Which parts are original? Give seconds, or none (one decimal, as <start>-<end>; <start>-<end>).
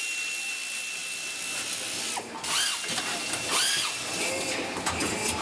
0.0-5.4